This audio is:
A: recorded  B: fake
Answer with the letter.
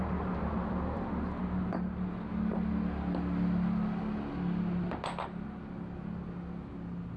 A